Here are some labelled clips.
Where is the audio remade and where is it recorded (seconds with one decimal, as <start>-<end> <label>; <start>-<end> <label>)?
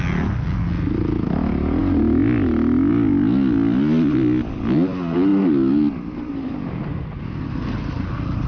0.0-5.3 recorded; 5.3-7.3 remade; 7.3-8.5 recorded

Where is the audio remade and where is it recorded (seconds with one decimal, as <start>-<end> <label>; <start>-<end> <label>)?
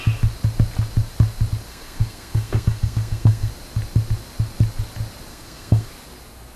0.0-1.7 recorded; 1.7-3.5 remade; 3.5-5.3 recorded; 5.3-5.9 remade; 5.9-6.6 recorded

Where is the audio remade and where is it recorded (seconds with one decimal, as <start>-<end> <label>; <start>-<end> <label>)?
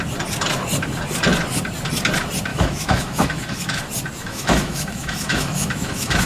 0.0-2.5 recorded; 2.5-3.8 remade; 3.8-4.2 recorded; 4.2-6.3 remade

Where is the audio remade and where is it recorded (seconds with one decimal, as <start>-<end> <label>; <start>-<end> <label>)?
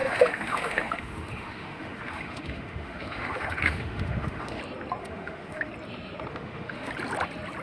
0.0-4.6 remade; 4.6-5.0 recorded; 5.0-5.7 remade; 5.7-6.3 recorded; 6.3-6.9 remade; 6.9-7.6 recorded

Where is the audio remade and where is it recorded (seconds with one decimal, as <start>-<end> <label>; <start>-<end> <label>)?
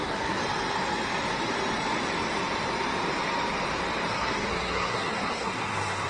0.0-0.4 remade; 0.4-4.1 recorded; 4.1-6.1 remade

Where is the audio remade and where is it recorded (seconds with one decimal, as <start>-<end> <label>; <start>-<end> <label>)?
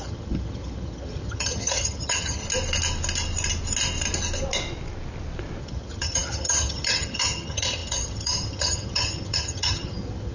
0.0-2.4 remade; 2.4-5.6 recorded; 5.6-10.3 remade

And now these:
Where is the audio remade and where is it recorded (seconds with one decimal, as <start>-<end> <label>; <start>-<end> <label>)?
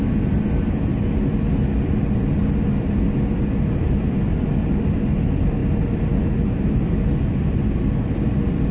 0.0-8.7 recorded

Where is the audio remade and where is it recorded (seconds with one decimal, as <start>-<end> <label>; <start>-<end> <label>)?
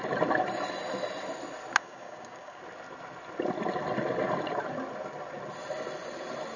0.0-1.8 recorded; 1.8-2.6 remade; 2.6-6.6 recorded